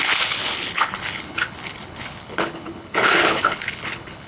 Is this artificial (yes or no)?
yes